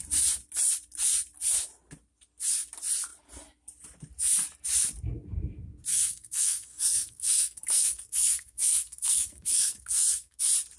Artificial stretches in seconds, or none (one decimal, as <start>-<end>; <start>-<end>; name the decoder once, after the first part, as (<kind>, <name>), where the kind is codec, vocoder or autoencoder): 5.9-10.4 (codec, SNAC)